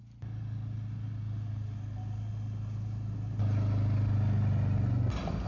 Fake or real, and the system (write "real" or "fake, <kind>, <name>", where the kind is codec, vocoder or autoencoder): real